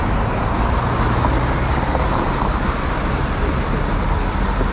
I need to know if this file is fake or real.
real